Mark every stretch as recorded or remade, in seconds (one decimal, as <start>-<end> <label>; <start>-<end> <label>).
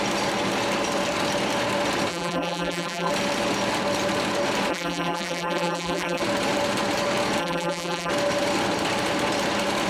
0.0-2.1 recorded; 2.1-3.1 remade; 3.1-4.7 recorded; 4.7-6.2 remade; 6.2-7.4 recorded; 7.4-8.1 remade; 8.1-9.9 recorded